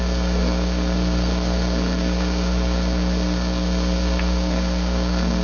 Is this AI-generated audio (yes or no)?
yes